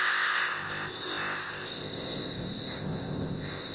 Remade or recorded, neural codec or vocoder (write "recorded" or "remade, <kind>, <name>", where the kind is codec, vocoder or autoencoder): remade, codec, ZipCodec